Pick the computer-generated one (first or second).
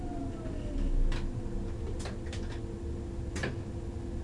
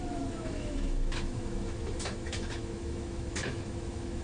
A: second